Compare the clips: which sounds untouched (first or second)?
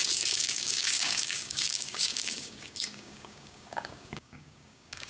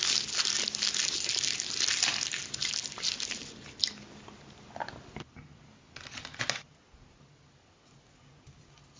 second